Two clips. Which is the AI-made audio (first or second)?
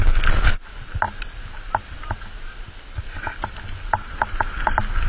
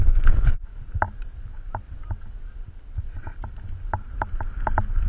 second